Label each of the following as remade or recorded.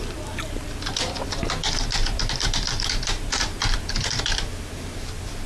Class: remade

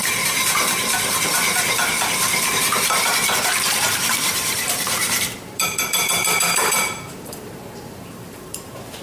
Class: remade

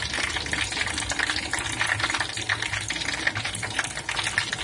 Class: recorded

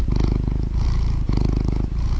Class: recorded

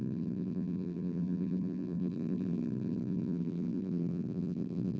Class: remade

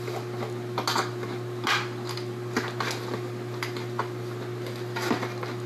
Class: recorded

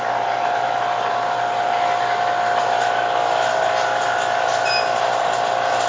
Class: recorded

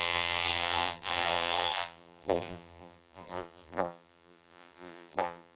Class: remade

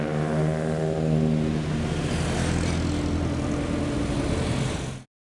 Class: recorded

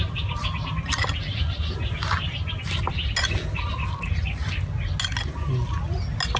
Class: recorded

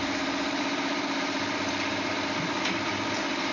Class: remade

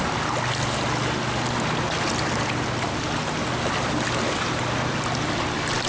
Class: recorded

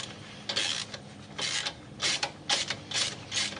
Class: recorded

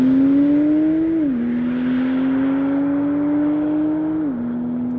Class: recorded